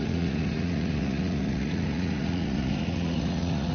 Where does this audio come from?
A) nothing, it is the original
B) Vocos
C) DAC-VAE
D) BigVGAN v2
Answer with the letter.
B